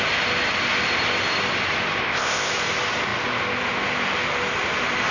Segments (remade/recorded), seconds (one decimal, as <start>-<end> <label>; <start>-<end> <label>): 0.0-2.0 recorded; 2.0-2.5 remade; 2.5-5.1 recorded